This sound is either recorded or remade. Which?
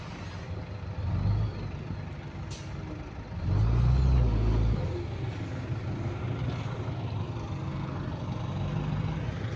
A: recorded